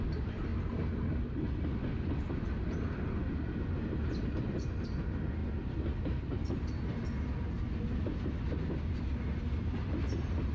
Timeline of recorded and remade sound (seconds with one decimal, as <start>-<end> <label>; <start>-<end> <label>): 0.0-10.5 recorded